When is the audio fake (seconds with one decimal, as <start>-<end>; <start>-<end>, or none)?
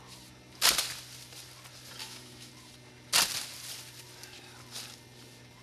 2.0-2.5